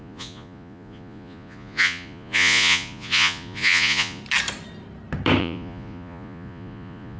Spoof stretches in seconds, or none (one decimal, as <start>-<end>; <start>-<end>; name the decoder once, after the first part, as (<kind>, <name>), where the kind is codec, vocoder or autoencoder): 0.0-4.2 (vocoder, Vocos); 5.4-7.2